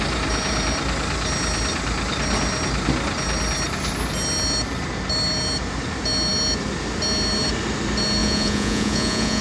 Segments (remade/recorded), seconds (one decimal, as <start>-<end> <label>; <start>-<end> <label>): 0.0-8.2 recorded; 8.2-9.4 remade